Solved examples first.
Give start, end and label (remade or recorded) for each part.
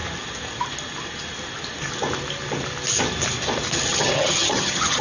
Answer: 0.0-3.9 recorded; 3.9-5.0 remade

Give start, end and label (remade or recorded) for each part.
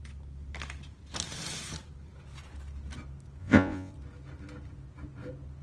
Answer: 0.0-3.4 recorded; 3.4-3.9 remade; 3.9-5.6 recorded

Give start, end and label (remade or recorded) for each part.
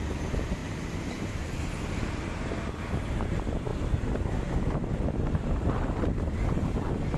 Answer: 0.0-0.6 recorded; 0.6-2.5 remade; 2.5-7.2 recorded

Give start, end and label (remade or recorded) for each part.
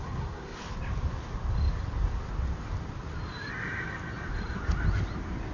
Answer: 0.0-0.6 remade; 0.6-5.5 recorded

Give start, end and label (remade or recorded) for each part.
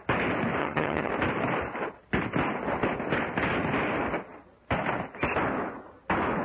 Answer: 0.0-0.6 recorded; 0.6-1.1 remade; 1.1-6.4 recorded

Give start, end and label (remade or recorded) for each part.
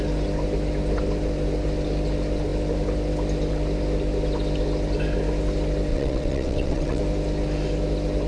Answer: 0.0-5.9 recorded; 5.9-7.0 remade; 7.0-8.3 recorded